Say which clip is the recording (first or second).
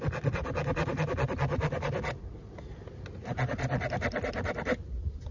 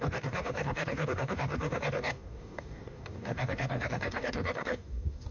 first